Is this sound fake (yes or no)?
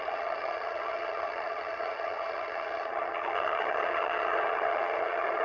yes